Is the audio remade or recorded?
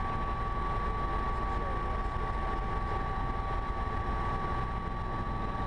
recorded